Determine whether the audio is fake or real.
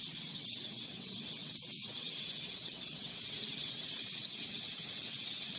fake